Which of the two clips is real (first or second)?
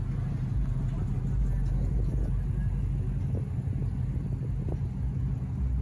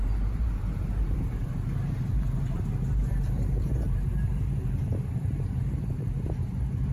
first